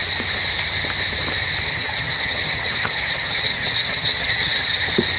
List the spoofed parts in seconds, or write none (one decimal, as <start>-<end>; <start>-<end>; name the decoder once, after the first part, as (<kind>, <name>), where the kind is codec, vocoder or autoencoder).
1.7-4.8 (vocoder, HiFi-GAN)